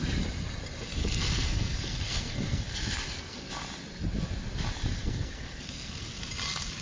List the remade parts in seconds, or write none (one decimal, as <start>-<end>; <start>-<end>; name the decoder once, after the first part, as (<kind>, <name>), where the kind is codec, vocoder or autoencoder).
1.0-3.5 (codec, SNAC); 5.0-6.2